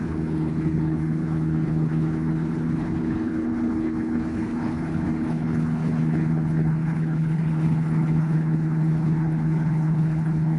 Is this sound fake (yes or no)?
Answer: yes